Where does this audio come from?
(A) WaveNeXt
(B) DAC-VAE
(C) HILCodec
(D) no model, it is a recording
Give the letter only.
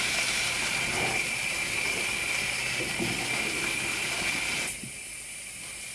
D